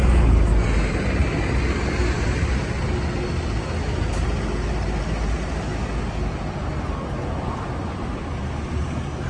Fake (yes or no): no